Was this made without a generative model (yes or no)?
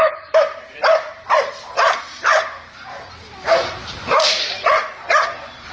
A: no